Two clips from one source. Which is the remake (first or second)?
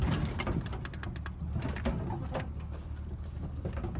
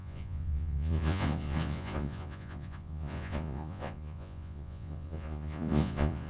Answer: second